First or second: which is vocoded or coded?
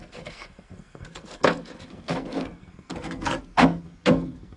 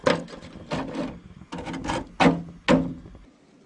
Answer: first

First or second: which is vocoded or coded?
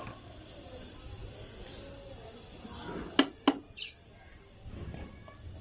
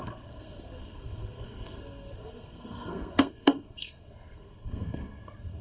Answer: second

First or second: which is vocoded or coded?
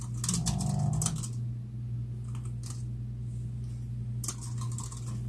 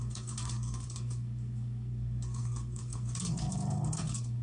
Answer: second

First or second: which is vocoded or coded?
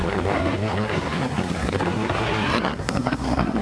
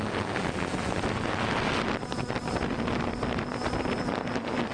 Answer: first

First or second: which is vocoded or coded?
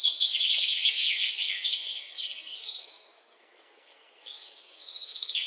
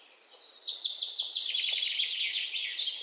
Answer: first